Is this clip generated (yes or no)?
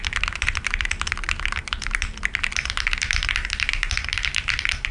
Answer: yes